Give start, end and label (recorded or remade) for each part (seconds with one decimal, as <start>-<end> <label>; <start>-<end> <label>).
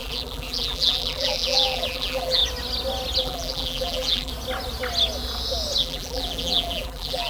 0.0-2.4 remade; 2.4-3.2 recorded; 3.2-4.3 remade; 4.3-5.8 recorded; 5.8-7.3 remade